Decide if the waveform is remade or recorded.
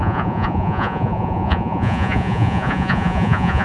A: remade